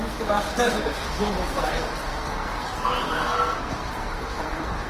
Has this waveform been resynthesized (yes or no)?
yes